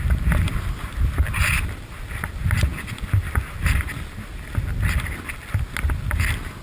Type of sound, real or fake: real